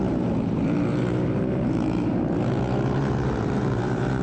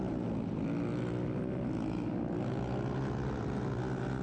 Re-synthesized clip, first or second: first